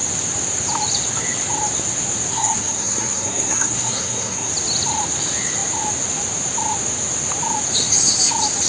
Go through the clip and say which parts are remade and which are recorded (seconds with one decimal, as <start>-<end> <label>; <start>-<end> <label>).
0.0-2.3 recorded; 2.3-4.5 remade; 4.5-8.7 recorded